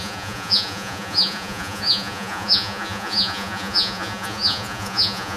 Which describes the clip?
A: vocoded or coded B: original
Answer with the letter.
A